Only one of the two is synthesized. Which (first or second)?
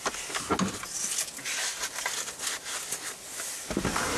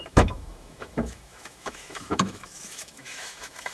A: second